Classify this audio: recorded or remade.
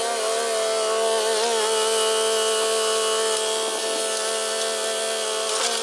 recorded